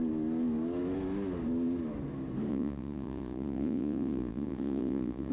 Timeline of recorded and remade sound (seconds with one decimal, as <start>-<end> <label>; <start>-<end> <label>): 0.0-2.5 recorded; 2.5-5.3 remade